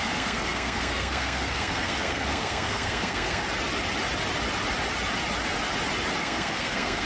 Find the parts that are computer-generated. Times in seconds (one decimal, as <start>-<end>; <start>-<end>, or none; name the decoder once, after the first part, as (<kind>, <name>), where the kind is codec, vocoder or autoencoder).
0.0-3.4 (codec, SNAC); 6.2-7.1